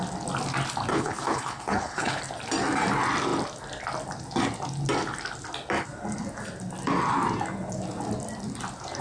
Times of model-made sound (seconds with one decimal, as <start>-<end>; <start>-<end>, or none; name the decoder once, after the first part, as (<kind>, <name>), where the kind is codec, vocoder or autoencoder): 0.9-2.2 (codec, HILCodec)